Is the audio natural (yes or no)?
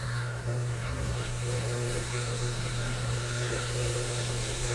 no